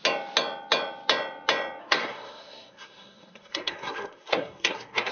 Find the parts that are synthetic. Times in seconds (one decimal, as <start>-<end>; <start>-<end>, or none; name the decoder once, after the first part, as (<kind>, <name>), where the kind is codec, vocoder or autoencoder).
1.8-5.1 (codec, SNAC)